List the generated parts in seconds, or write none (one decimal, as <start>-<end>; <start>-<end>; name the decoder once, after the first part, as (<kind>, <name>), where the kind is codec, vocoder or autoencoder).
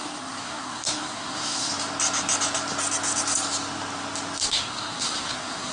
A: 0.0-1.7 (codec, SNAC); 4.4-5.7